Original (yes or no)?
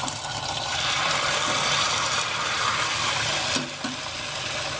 no